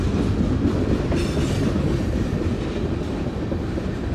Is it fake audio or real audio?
real